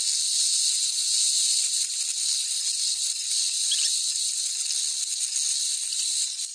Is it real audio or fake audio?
real